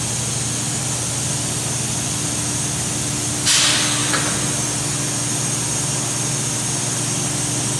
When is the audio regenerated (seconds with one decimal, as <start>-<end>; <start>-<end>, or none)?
none

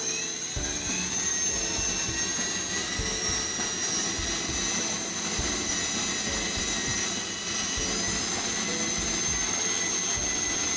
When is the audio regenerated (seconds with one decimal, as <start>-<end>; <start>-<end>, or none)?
none

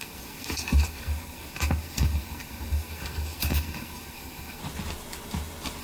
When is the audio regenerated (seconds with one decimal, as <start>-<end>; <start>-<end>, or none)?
0.0-4.6

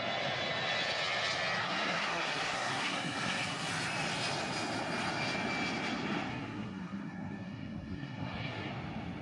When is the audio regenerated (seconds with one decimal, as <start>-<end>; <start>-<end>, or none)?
1.6-3.7; 6.3-8.7

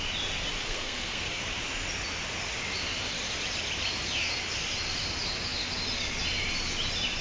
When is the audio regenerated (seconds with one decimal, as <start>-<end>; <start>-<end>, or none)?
0.6-1.4